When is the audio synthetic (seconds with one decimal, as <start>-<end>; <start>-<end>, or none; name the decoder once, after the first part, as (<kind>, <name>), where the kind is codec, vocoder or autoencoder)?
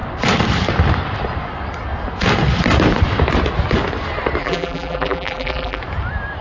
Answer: 4.4-5.8 (vocoder, BigVGAN v2)